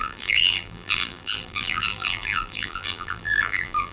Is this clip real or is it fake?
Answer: fake